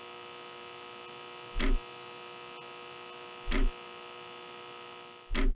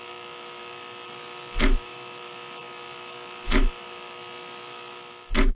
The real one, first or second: first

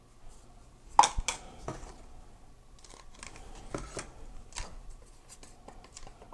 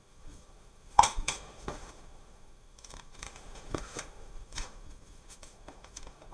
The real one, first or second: first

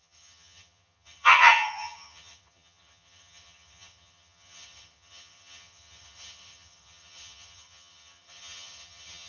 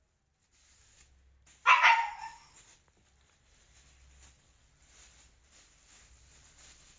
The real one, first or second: second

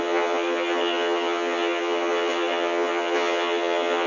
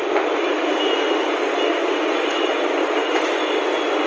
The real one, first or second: second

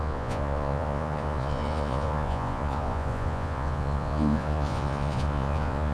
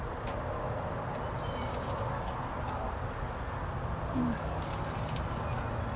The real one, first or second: second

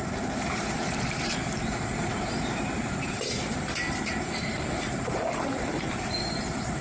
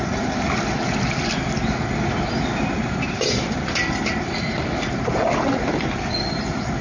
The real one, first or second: second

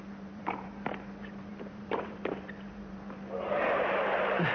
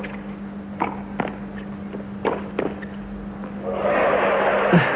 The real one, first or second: second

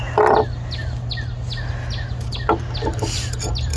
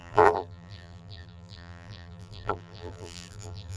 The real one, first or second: first